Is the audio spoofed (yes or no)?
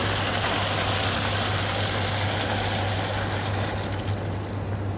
no